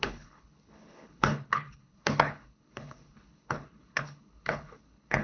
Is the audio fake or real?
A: fake